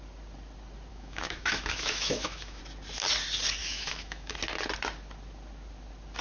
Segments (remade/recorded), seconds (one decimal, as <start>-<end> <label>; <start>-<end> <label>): 0.0-0.9 recorded; 0.9-2.6 remade; 2.6-3.6 recorded; 3.6-4.4 remade; 4.4-6.2 recorded